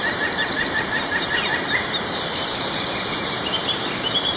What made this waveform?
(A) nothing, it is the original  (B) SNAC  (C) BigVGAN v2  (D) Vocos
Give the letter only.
C